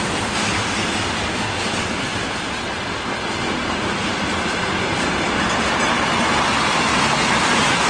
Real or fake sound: real